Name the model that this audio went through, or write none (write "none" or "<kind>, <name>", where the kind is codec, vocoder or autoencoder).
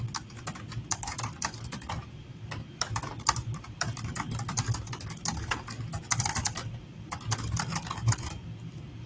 none